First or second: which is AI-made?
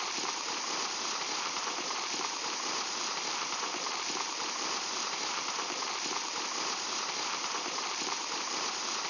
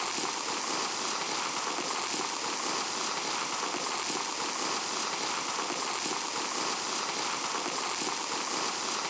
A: first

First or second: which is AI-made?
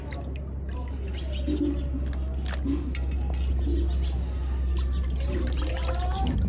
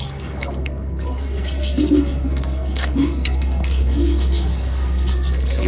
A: second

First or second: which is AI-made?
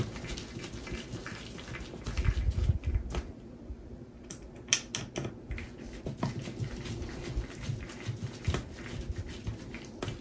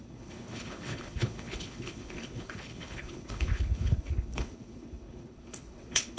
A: second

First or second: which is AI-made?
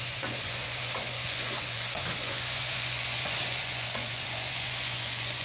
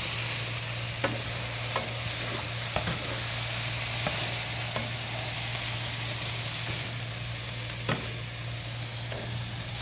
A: first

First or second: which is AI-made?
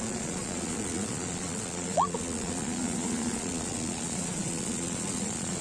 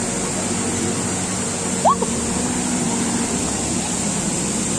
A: first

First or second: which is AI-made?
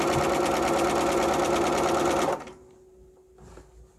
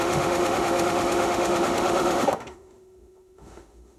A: second